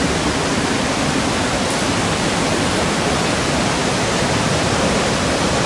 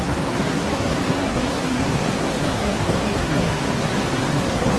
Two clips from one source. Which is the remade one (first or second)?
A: second